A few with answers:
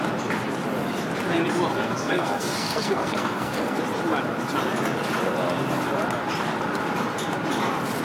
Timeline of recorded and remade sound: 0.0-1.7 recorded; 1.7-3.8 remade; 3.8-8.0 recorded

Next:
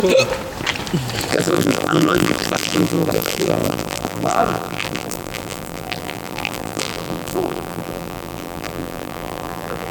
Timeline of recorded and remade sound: 0.0-1.3 recorded; 1.3-9.9 remade

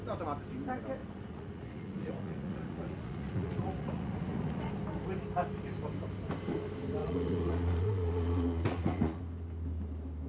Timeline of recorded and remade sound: 0.0-1.0 recorded; 1.0-4.7 remade; 4.7-7.0 recorded; 7.0-9.2 remade; 9.2-10.3 recorded

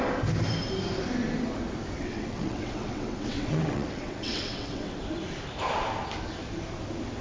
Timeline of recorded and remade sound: 0.0-2.0 recorded; 2.0-5.0 remade; 5.0-7.2 recorded

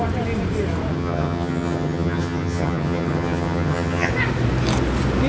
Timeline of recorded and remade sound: 0.0-0.9 recorded; 0.9-4.1 remade; 4.1-5.3 recorded

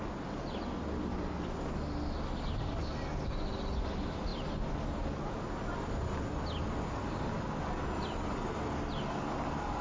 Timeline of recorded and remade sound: 0.0-9.8 recorded

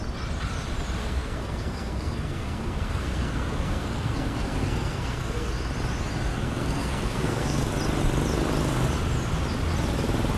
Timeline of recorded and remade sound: 0.0-1.0 recorded; 1.0-5.5 remade; 5.5-6.3 recorded; 6.3-7.7 remade; 7.7-10.4 recorded